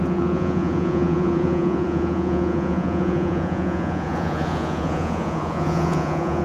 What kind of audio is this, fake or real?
fake